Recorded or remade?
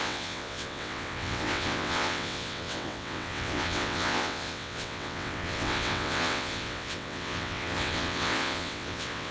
remade